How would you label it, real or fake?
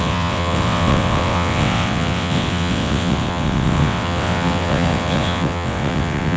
fake